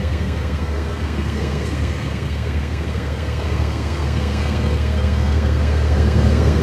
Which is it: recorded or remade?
remade